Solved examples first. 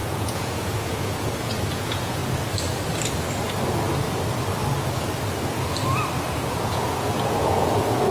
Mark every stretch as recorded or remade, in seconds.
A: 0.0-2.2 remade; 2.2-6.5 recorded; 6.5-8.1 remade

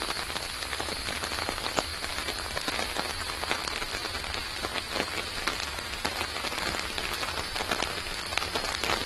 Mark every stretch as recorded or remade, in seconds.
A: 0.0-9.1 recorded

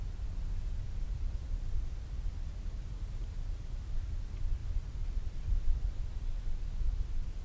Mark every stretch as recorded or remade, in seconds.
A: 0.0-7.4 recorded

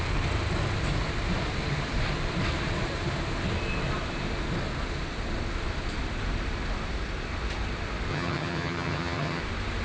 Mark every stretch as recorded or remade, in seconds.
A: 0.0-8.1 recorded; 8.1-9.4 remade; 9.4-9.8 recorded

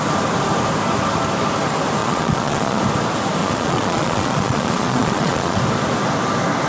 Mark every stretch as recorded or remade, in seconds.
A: 0.0-2.0 recorded; 2.0-2.8 remade; 2.8-3.4 recorded; 3.4-5.6 remade; 5.6-6.7 recorded

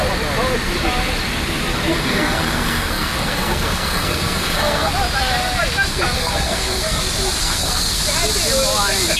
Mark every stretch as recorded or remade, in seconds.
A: 0.0-1.9 recorded; 1.9-4.9 remade; 4.9-5.9 recorded; 5.9-7.0 remade; 7.0-7.4 recorded; 7.4-8.0 remade; 8.0-9.2 recorded

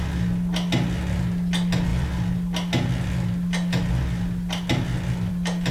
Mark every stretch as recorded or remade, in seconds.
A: 0.0-5.7 recorded

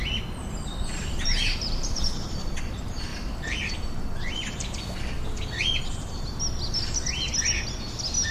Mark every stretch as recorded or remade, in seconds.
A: 0.0-0.4 recorded; 0.4-2.5 remade; 2.5-8.3 recorded